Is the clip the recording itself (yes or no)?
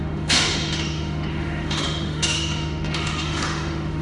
no